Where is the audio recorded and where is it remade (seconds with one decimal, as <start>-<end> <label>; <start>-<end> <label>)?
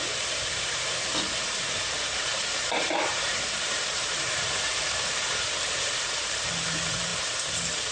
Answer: 0.0-7.9 remade